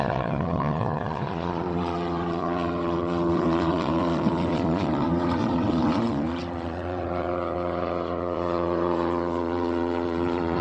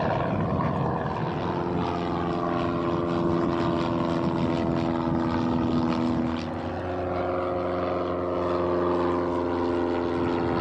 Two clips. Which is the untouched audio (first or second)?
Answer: second